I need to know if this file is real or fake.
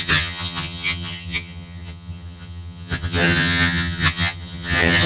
fake